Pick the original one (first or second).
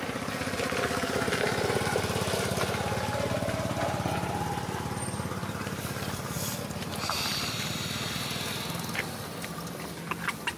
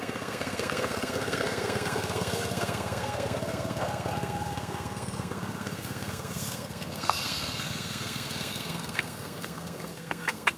first